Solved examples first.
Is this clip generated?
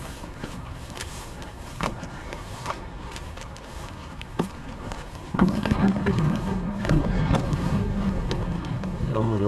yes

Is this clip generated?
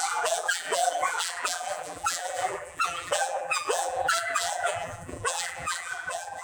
yes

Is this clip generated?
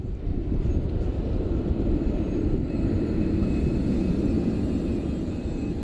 yes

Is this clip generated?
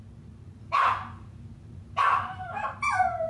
yes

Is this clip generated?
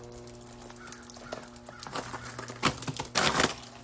no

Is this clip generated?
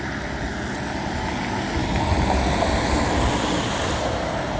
no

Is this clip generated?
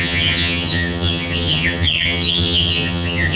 yes